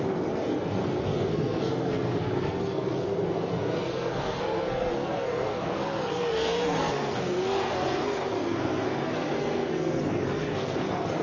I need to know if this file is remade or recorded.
remade